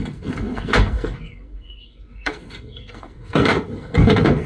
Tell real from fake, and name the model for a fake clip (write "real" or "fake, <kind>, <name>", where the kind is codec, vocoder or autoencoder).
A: fake, codec, SNAC